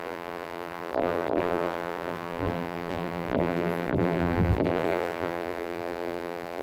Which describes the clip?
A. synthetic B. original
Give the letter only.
A